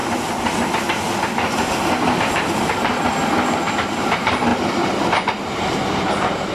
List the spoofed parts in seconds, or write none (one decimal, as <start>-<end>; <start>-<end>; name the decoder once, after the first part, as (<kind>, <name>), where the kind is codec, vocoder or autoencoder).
3.7-4.5 (vocoder, BigVGAN v2); 5.3-6.5